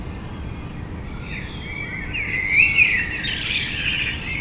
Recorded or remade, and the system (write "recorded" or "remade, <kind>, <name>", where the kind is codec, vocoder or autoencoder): recorded